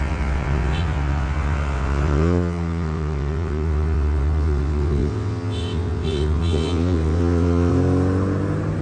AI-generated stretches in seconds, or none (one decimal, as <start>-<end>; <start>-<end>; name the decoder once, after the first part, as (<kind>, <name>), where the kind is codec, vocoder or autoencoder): 0.0-7.7 (vocoder, WaveNeXt)